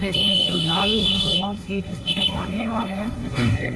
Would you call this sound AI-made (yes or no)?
yes